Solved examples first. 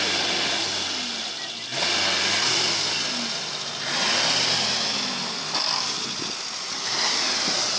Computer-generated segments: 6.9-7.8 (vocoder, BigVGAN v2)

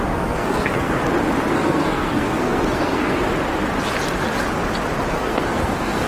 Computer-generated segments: 0.0-1.0 (codec, SNAC); 1.5-3.2; 5.1-6.1

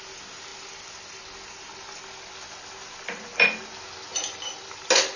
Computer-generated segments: none

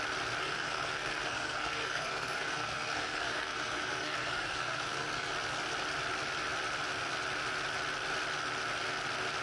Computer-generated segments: 0.4-5.3 (codec, SNAC)

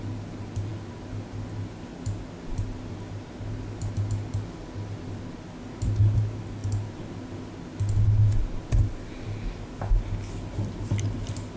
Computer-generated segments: none

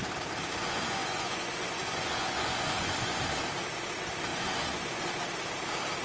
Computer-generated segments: 0.6-3.2 (vocoder, Vocos); 4.3-5.0

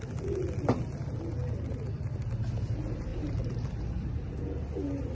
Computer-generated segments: 3.1-4.1 (vocoder, BigVGAN v2)

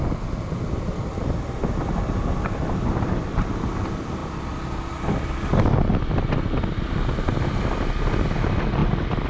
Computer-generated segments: none